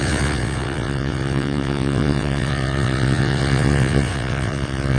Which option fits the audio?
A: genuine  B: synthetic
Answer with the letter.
B